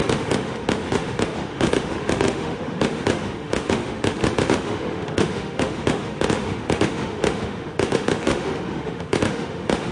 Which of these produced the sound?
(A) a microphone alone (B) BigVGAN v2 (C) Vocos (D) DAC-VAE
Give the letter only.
D